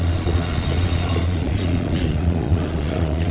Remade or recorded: remade